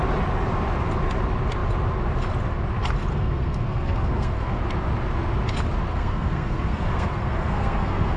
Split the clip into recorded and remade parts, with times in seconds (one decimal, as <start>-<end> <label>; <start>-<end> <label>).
0.0-3.1 recorded; 3.1-4.6 remade; 4.6-5.9 recorded; 5.9-8.2 remade